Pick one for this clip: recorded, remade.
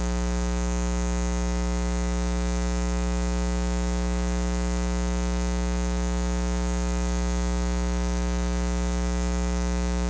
remade